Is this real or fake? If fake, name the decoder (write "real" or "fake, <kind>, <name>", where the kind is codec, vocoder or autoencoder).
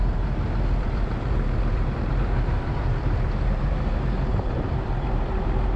fake, vocoder, BigVGAN v2